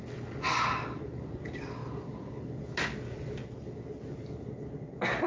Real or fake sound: real